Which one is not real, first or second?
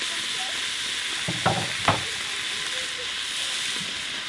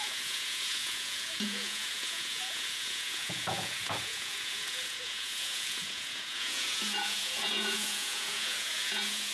second